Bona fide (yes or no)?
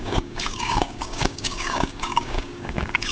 no